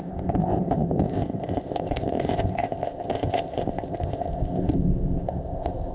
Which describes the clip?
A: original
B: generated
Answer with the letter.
B